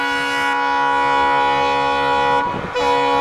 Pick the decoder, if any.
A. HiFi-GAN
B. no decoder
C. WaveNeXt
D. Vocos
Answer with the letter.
B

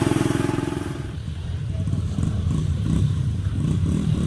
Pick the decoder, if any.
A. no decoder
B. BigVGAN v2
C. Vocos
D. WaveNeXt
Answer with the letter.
B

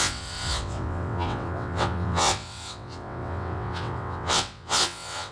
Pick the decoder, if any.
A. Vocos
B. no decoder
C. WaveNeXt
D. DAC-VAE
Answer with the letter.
C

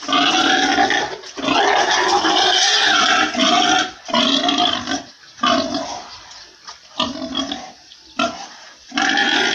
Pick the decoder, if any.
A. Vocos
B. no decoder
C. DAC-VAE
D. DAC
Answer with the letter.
B